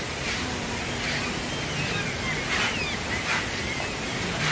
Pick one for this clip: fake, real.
real